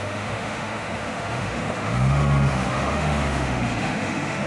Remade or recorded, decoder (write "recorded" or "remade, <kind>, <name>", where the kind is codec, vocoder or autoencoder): remade, autoencoder, DAC-VAE